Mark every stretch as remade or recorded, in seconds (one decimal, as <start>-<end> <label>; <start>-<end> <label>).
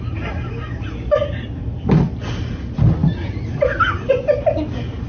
0.0-5.1 recorded